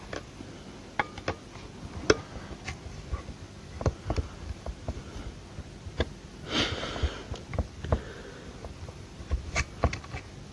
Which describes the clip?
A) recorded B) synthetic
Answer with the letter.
A